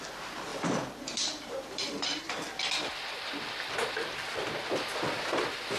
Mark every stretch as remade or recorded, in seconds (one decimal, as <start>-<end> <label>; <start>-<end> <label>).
0.0-0.5 recorded; 0.5-2.2 remade; 2.2-5.8 recorded